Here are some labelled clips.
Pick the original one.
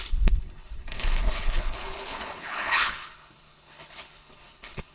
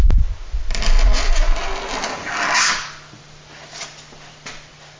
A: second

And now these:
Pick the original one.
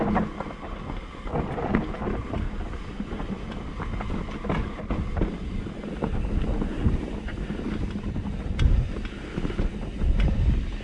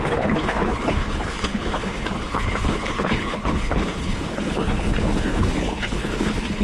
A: first